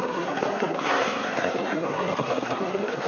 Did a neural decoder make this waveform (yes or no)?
yes